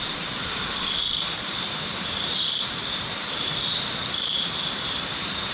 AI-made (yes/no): yes